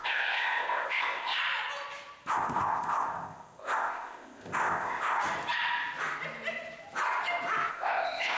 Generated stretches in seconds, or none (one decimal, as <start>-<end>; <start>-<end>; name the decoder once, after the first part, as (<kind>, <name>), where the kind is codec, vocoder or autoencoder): 0.0-1.4 (codec, ZipCodec); 2.3-5.2; 7.7-8.4